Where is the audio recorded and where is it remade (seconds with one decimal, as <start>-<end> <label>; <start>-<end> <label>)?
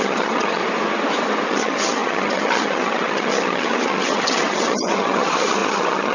0.0-0.6 remade; 0.6-1.5 recorded; 1.5-6.1 remade